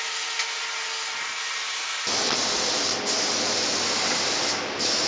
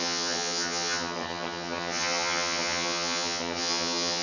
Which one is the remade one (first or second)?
second